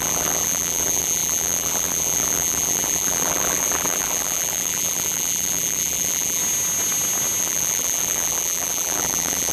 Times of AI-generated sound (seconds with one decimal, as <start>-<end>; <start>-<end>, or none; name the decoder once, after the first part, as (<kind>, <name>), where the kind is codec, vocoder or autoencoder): 0.0-6.4 (vocoder, BigVGAN v2); 7.4-9.5